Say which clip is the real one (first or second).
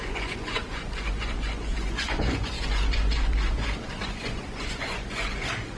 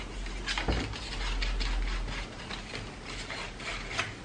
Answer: second